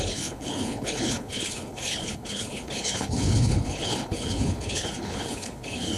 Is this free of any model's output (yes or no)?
no